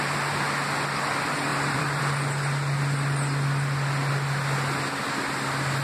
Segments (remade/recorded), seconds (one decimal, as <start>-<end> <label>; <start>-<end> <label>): 0.0-1.5 recorded; 1.5-2.0 remade; 2.0-5.8 recorded